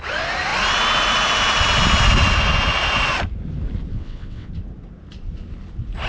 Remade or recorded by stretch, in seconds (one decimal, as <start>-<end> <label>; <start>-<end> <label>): 0.0-3.9 recorded; 3.9-4.5 remade; 4.5-6.1 recorded